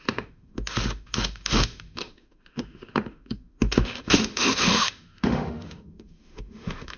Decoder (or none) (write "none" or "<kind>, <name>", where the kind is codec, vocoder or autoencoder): autoencoder, DAC-VAE